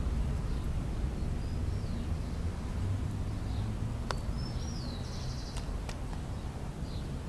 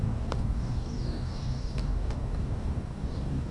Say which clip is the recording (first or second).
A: first